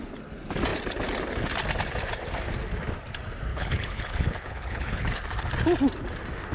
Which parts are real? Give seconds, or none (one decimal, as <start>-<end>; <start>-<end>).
0.0-3.5; 5.1-6.5